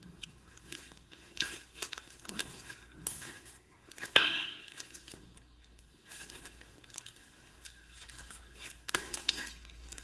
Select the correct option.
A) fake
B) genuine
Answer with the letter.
A